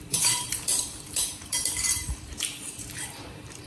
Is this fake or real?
fake